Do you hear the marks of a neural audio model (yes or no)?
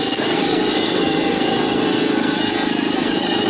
yes